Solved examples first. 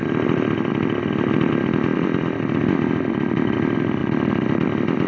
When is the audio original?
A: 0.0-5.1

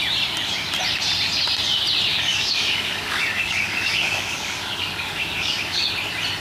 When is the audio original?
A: 0.0-2.1; 5.9-6.4

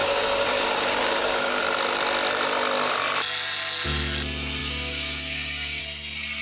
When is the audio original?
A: 1.6-4.6; 5.8-6.4